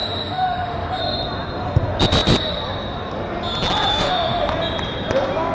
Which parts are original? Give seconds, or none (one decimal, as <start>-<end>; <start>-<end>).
1.0-3.9; 4.5-5.5

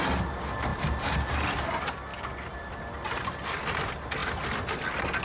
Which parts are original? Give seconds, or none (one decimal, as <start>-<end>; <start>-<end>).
0.0-0.7; 1.3-2.1; 3.6-5.2

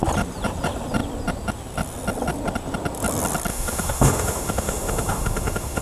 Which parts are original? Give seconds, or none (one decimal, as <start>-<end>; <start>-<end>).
0.0-3.5

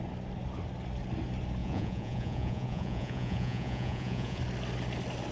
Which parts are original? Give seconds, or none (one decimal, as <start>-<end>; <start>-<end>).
0.0-1.6; 4.4-5.3

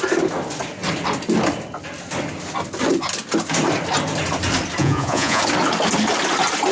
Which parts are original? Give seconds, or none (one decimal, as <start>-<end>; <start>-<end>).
0.0-4.8; 5.4-6.7

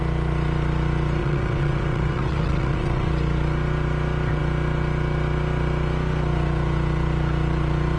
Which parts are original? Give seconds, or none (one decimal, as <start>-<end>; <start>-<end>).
0.0-1.2; 3.1-8.0

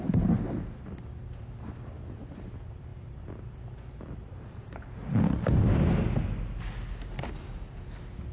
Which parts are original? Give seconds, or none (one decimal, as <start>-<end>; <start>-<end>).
0.0-8.3

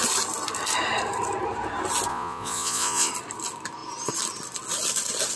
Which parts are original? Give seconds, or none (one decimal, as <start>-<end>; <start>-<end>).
0.0-2.1; 3.1-5.4